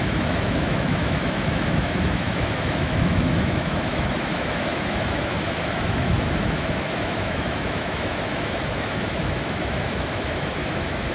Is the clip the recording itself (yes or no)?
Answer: no